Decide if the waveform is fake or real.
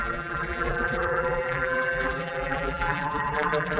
fake